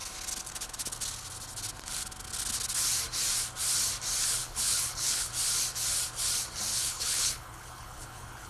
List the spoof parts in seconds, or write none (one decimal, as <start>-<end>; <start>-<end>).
4.4-5.3; 6.7-8.5